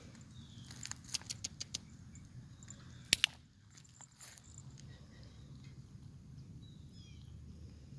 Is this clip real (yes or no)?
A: yes